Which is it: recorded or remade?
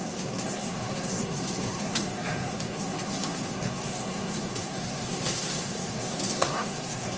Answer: remade